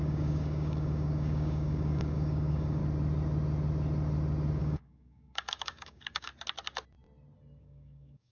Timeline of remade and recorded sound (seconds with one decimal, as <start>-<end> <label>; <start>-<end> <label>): 0.0-2.8 remade; 2.8-4.6 recorded; 4.6-6.3 remade; 6.3-7.6 recorded; 7.6-8.3 remade